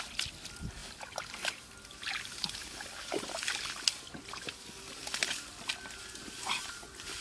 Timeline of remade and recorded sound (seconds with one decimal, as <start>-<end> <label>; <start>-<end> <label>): 0.0-7.2 recorded